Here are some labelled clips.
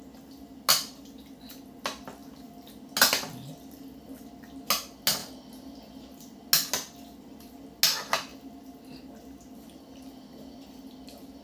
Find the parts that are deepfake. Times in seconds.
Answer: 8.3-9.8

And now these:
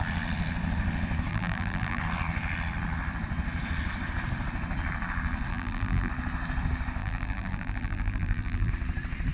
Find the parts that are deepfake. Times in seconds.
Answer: 1.3-2.0; 5.5-6.1; 7.0-8.7

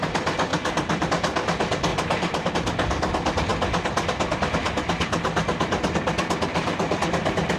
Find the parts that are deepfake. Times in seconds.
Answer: 0.5-1.1; 1.9-2.5; 6.5-7.0